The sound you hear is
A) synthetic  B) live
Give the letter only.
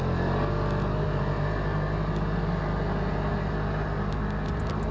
B